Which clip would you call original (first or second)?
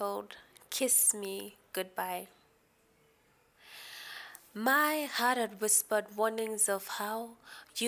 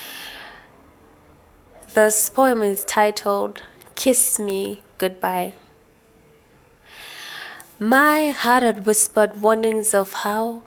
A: first